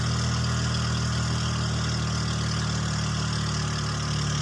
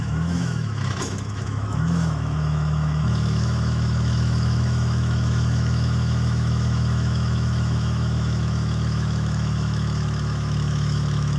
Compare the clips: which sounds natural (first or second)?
first